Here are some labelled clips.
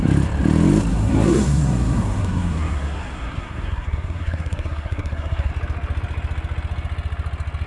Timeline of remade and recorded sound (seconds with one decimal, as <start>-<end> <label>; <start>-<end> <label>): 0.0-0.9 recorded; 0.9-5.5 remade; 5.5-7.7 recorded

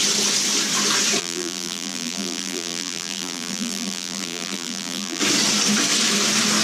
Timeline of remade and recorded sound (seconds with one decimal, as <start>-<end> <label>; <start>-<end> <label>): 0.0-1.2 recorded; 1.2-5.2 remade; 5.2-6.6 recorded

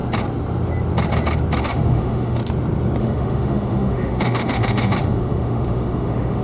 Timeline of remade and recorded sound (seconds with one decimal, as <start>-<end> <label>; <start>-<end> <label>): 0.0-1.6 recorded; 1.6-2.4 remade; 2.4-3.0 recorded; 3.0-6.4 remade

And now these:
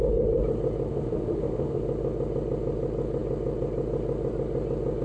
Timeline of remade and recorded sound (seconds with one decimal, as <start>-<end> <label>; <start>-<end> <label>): 0.0-0.9 recorded; 0.9-1.8 remade; 1.8-5.0 recorded

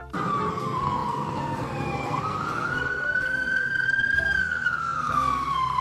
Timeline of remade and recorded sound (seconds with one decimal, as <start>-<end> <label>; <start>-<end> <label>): 0.0-0.5 recorded; 0.5-5.8 remade